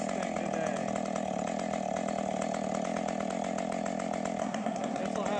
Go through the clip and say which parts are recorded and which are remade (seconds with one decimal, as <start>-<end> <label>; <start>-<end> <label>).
0.0-4.4 recorded; 4.4-5.0 remade; 5.0-5.4 recorded